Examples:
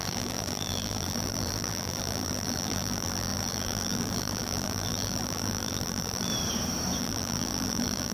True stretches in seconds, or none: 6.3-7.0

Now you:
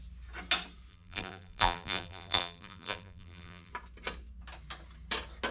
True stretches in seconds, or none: 0.0-0.9; 3.7-5.5